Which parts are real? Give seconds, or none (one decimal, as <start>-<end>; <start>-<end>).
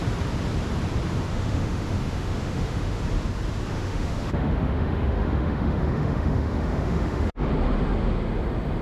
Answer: 0.0-1.3; 3.0-3.7; 7.5-8.8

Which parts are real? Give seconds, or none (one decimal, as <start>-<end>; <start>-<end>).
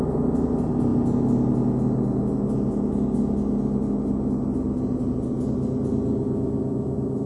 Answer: 0.0-7.3